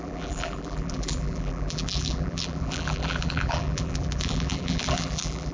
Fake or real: fake